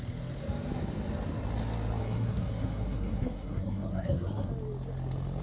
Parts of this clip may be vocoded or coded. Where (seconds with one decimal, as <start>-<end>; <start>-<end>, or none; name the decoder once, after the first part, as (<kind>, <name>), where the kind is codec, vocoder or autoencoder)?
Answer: 2.0-4.5 (codec, SNAC)